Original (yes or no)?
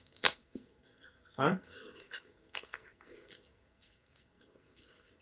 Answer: no